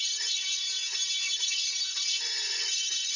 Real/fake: fake